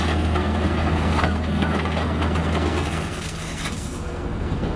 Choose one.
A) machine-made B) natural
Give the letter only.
A